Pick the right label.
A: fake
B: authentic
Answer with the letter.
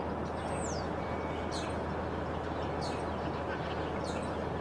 B